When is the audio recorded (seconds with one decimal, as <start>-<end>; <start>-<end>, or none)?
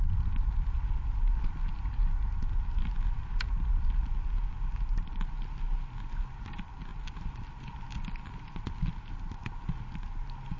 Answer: 0.0-10.6